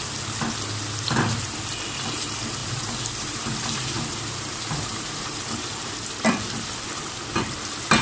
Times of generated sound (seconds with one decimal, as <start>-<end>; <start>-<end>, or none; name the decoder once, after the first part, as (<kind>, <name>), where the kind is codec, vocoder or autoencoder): 2.6-5.9 (vocoder, BigVGAN v2)